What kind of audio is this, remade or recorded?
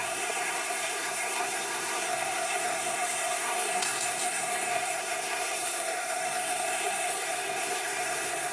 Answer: remade